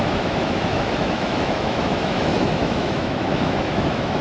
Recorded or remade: remade